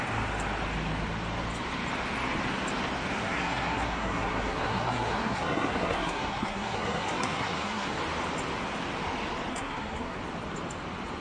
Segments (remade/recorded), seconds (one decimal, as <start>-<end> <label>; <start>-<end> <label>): 0.0-3.2 recorded; 3.2-8.0 remade; 8.0-9.5 recorded; 9.5-10.2 remade; 10.2-11.2 recorded

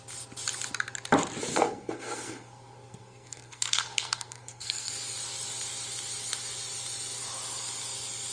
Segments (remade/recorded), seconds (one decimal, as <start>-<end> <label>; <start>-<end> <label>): 0.0-1.5 recorded; 1.5-4.9 remade; 4.9-8.3 recorded

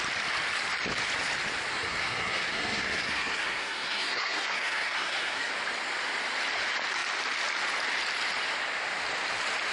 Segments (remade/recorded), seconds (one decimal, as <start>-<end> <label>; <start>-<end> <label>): 0.0-1.7 recorded; 1.7-5.5 remade; 5.5-9.7 recorded

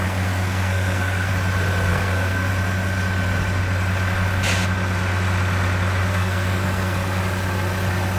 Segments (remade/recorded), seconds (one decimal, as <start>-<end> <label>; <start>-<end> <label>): 0.0-1.3 remade; 1.3-1.9 recorded; 1.9-2.5 remade; 2.5-6.1 recorded; 6.1-7.2 remade; 7.2-8.2 recorded